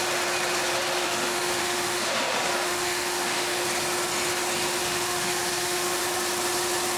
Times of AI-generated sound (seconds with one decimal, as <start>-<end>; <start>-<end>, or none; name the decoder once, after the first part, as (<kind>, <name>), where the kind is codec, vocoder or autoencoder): 1.0-3.6 (autoencoder, DAC-VAE); 4.8-6.0